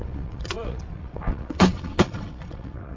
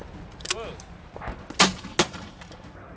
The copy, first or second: first